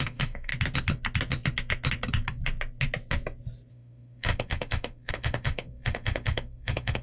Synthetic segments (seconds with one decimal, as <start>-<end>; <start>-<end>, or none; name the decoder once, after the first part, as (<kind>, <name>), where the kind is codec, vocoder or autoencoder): 0.0-0.5 (autoencoder, DAC-VAE); 3.7-7.0

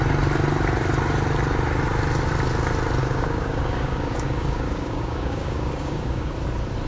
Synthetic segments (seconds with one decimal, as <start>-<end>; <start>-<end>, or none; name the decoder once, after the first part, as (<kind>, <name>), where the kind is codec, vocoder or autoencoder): 3.0-6.3 (codec, DAC)

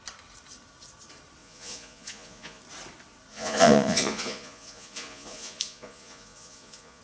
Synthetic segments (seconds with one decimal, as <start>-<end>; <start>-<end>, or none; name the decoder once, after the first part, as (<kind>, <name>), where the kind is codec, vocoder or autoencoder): 1.4-2.6 (vocoder, Vocos); 3.3-7.0

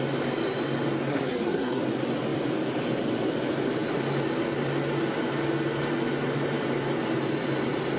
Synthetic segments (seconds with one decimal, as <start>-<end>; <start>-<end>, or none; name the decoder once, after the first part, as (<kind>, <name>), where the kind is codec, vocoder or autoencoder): 1.1-1.8 (codec, SNAC)